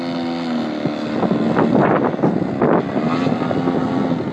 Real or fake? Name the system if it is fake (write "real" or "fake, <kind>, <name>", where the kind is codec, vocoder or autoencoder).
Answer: real